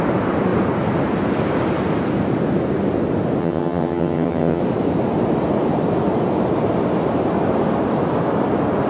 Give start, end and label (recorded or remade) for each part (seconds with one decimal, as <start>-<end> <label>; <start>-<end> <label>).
0.0-3.4 recorded; 3.4-4.6 remade; 4.6-8.9 recorded